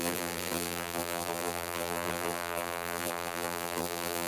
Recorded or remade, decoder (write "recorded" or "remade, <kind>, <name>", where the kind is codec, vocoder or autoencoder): remade, vocoder, BigVGAN v2